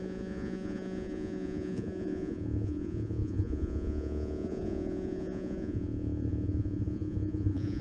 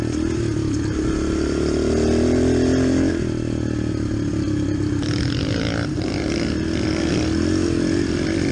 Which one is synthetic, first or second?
first